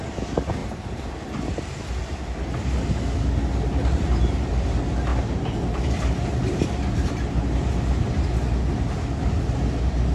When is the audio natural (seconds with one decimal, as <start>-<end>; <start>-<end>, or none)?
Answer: 0.0-0.6; 1.1-5.1; 8.3-10.1